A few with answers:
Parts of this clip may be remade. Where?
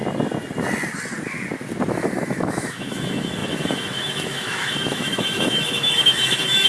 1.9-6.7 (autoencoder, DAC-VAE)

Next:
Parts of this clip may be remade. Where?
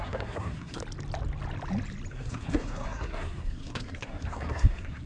0.0-0.8 (codec, SNAC); 2.1-5.1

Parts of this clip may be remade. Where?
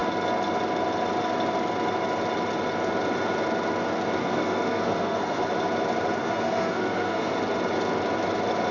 4.2-5.4 (codec, SNAC); 6.2-7.3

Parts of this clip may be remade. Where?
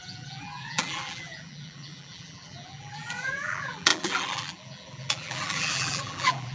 0.0-6.5 (vocoder, BigVGAN v2)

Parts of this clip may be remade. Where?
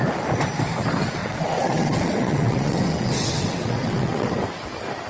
1.2-4.3 (vocoder, WaveNeXt)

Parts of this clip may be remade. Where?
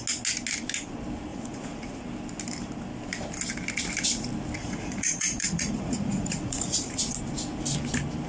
1.3-2.0 (vocoder, Vocos); 4.6-7.0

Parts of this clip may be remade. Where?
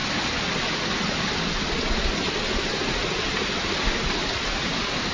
none